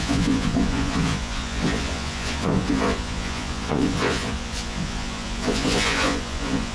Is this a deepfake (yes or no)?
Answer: yes